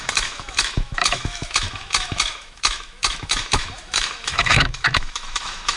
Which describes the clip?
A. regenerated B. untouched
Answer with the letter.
A